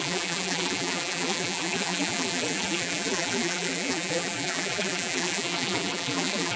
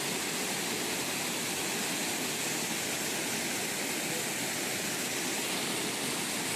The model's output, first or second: first